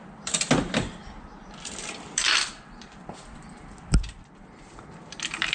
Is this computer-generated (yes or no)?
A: yes